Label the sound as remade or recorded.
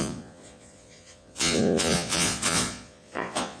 remade